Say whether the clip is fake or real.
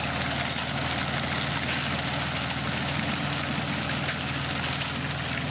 real